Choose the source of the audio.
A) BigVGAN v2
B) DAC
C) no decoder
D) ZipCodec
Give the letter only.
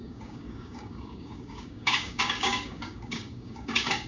B